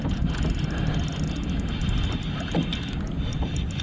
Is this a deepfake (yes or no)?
no